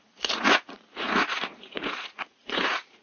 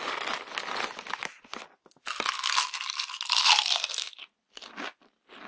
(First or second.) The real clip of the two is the second